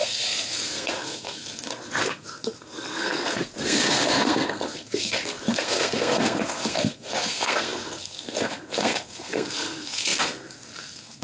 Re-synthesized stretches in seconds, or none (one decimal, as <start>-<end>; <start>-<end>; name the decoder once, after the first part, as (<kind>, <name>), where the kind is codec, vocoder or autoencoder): 0.0-11.2 (codec, SNAC)